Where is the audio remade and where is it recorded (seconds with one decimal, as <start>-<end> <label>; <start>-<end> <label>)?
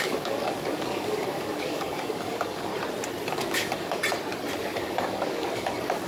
0.0-2.7 remade; 2.7-3.3 recorded; 3.3-4.0 remade; 4.0-4.6 recorded; 4.6-6.1 remade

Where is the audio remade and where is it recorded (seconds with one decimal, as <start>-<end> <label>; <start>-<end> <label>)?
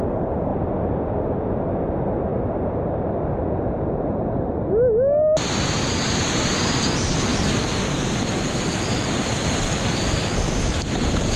0.0-11.4 recorded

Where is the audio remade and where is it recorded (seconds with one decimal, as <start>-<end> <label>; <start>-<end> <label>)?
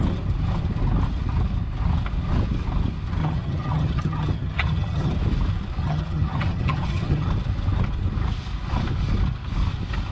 0.0-3.2 recorded; 3.2-5.1 remade; 5.1-5.8 recorded; 5.8-7.3 remade; 7.3-10.1 recorded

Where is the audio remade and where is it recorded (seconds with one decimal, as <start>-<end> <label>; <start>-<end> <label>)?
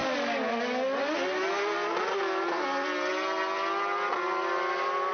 0.0-5.1 recorded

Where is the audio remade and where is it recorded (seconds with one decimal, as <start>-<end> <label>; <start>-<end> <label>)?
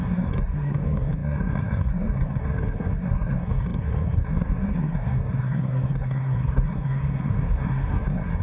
0.0-8.4 remade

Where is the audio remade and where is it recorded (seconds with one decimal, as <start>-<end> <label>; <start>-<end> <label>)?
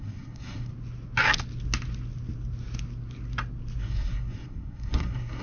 0.0-0.7 remade; 0.7-3.8 recorded; 3.8-5.4 remade